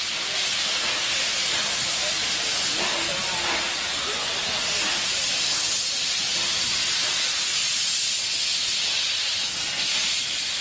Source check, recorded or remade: recorded